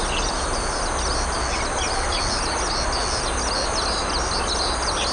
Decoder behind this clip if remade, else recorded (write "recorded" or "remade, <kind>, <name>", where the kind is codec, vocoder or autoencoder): recorded